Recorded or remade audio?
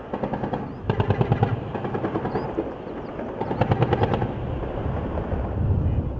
recorded